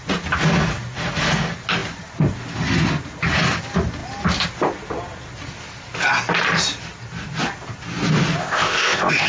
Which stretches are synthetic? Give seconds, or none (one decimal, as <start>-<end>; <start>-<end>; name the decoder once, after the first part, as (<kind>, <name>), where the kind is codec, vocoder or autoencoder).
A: 8.4-9.3 (codec, ZipCodec)